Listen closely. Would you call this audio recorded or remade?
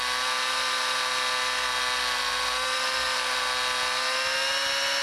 recorded